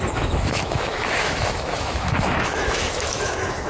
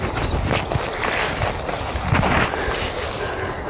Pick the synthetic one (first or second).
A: first